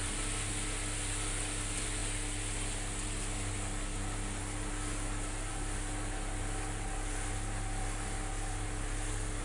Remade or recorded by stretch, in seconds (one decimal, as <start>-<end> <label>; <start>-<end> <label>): 0.0-9.4 recorded